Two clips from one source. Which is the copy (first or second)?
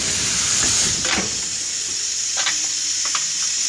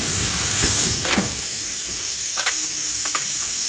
second